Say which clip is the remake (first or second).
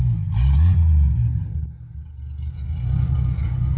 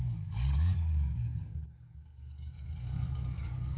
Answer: second